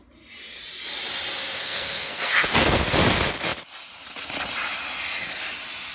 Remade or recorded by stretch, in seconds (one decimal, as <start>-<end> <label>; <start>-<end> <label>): 0.0-1.6 recorded; 1.6-2.8 remade; 2.8-5.9 recorded